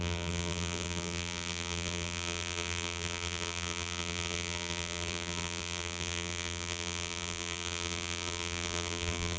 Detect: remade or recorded remade